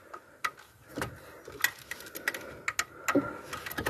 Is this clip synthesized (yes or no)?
no